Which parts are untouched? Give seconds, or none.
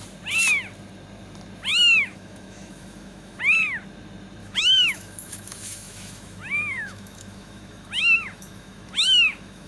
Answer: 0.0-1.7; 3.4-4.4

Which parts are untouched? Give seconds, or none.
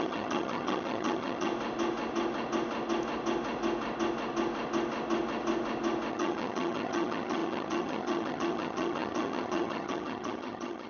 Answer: 1.5-6.1